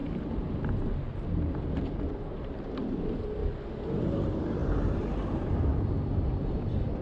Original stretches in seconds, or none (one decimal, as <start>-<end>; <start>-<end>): 3.4-4.0